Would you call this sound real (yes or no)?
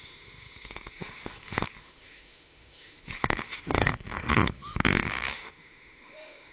no